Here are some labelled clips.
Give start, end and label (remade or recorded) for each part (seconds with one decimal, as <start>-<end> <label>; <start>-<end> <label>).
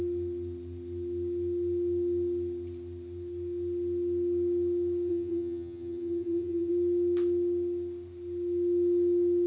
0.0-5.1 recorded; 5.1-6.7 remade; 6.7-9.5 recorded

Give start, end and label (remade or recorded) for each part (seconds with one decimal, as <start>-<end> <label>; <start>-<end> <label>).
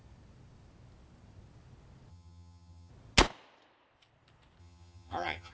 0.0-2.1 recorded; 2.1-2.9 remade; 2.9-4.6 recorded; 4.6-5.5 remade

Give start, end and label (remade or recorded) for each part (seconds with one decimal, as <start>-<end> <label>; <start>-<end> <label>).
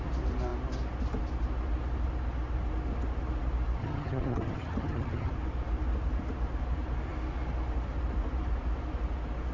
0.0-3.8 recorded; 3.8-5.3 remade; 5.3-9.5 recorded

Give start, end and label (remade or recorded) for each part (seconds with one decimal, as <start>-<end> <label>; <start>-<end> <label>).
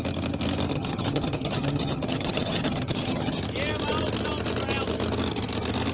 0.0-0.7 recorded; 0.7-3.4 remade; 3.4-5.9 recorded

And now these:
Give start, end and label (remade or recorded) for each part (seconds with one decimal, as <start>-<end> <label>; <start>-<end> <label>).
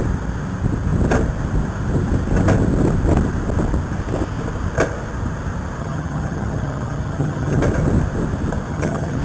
0.0-5.8 recorded; 5.8-7.6 remade; 7.6-8.7 recorded; 8.7-9.2 remade